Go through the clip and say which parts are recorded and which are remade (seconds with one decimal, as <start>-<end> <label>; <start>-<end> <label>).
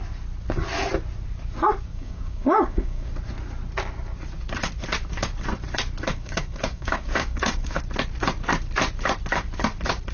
0.0-1.9 recorded; 1.9-3.1 remade; 3.1-6.1 recorded; 6.1-7.8 remade; 7.8-10.1 recorded